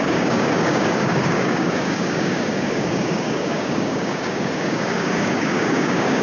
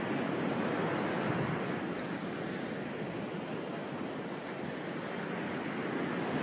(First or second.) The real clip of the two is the second